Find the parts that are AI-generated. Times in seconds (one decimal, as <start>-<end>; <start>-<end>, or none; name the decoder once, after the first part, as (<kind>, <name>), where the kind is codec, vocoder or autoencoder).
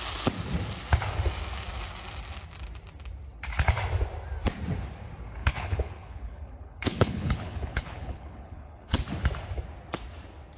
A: 5.4-9.0 (codec, HILCodec)